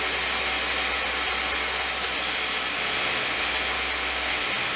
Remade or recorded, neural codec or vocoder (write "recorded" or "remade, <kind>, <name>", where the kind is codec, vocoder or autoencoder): recorded